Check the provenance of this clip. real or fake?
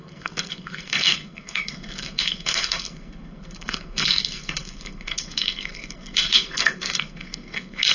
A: fake